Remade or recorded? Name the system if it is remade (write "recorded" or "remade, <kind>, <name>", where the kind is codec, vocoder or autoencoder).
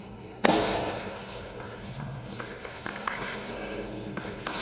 remade, codec, SNAC